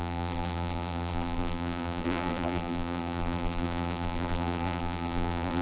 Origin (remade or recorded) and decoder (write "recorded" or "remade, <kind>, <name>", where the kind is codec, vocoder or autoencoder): remade, vocoder, BigVGAN v2